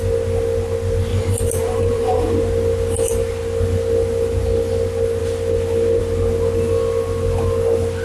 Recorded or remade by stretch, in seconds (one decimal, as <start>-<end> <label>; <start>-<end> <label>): 0.0-1.1 recorded; 1.1-2.3 remade; 2.3-8.0 recorded